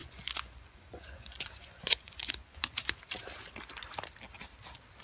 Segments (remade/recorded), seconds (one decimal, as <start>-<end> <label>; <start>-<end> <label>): 0.0-3.0 remade; 3.0-5.0 recorded